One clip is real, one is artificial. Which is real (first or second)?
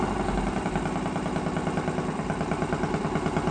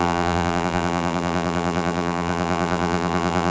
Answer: first